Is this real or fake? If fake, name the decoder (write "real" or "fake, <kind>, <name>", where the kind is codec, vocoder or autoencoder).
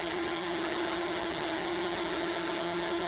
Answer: fake, vocoder, HiFi-GAN